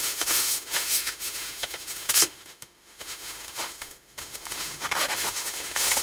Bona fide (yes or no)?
no